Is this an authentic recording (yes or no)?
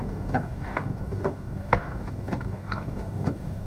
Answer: no